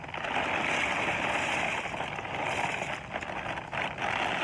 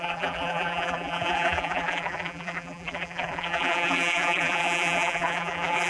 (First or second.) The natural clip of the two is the first